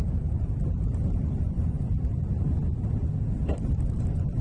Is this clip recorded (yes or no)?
yes